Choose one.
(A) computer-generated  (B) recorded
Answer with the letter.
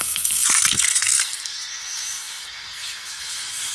A